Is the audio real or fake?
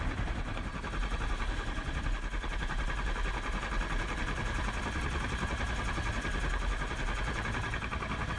real